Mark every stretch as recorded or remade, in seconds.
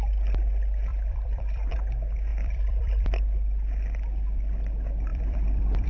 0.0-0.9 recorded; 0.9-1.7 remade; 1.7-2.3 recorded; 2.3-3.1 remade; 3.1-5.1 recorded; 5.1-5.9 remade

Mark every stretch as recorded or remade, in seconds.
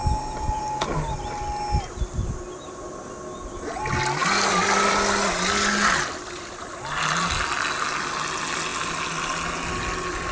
0.0-0.6 remade; 0.6-10.3 recorded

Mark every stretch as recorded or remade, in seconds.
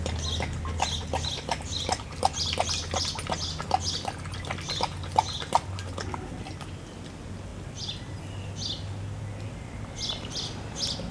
0.0-11.1 recorded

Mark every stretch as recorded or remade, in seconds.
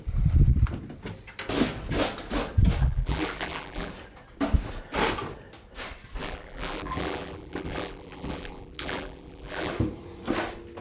0.0-2.8 recorded; 2.8-3.9 remade; 3.9-6.2 recorded; 6.2-9.7 remade; 9.7-10.8 recorded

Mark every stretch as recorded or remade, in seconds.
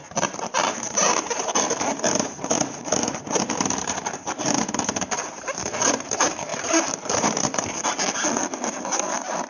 0.0-7.8 remade; 7.8-8.7 recorded; 8.7-9.5 remade